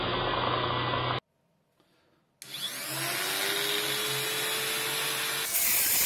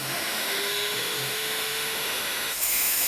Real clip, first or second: first